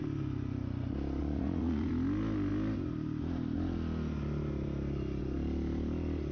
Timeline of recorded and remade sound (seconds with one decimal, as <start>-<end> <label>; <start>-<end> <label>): 0.0-1.2 recorded; 1.2-1.9 remade; 1.9-6.3 recorded